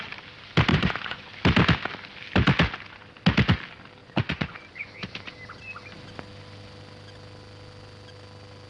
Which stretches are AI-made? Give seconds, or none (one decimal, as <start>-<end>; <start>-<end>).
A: 0.7-1.3; 4.0-4.9